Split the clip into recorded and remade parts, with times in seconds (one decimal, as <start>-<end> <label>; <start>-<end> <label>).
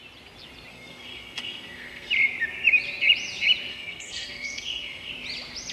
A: 0.0-0.7 recorded; 0.7-2.1 remade; 2.1-3.7 recorded; 3.7-5.1 remade; 5.1-5.7 recorded